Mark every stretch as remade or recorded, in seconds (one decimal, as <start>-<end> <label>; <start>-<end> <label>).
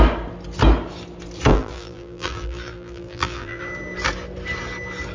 0.0-1.5 recorded; 1.5-3.6 remade; 3.6-5.1 recorded